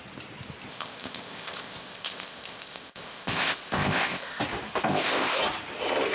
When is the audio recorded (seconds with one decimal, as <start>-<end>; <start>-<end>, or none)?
0.0-0.7; 4.4-4.9; 5.4-6.1